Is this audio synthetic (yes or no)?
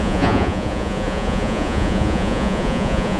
yes